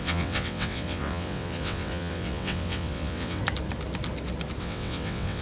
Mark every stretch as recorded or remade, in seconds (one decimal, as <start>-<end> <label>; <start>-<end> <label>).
0.0-3.4 remade; 3.4-4.6 recorded; 4.6-5.4 remade